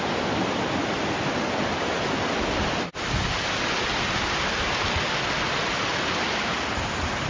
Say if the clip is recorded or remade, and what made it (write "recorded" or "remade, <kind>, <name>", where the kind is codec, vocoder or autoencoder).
recorded